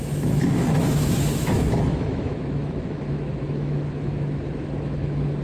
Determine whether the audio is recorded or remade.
remade